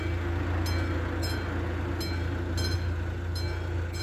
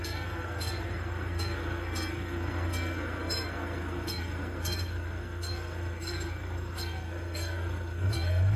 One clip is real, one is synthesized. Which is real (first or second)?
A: first